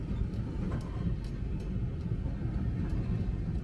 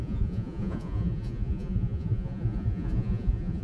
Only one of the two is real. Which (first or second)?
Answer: first